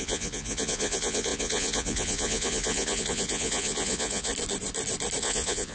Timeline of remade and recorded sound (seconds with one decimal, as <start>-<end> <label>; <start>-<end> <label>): 0.0-4.3 remade; 4.3-5.2 recorded; 5.2-5.7 remade